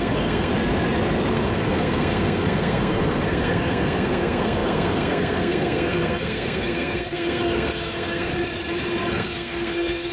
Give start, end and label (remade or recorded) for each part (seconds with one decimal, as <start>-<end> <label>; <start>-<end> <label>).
0.0-0.5 remade; 0.5-1.3 recorded; 1.3-8.3 remade; 8.3-9.1 recorded; 9.1-10.1 remade